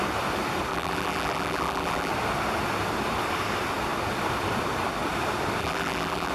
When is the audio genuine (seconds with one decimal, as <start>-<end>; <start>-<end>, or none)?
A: 0.0-0.7; 2.1-5.6

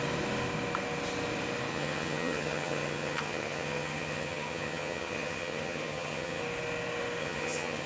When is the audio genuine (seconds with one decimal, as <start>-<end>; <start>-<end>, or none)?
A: 0.0-1.7; 6.4-7.2

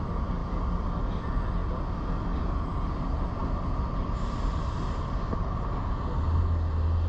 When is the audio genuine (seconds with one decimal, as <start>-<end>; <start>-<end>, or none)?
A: 0.0-7.1